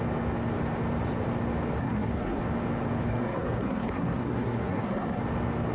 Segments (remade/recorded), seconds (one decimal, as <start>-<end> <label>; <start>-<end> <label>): 0.0-1.8 recorded; 1.8-2.4 remade; 2.4-3.1 recorded; 3.1-5.2 remade; 5.2-5.7 recorded